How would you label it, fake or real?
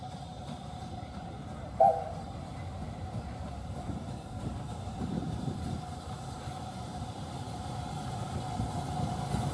fake